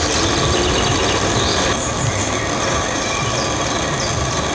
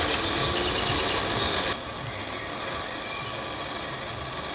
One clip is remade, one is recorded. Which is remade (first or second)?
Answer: first